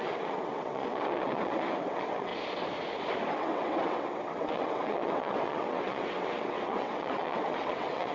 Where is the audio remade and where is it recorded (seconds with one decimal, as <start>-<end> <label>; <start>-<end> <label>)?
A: 0.0-2.3 remade; 2.3-3.3 recorded; 3.3-8.1 remade